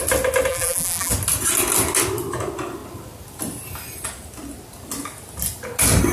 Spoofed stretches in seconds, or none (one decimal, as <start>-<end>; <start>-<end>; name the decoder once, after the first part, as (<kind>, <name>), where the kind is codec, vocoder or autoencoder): 0.5-1.1 (vocoder, BigVGAN v2)